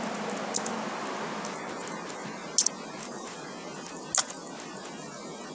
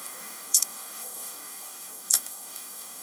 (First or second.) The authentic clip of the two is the first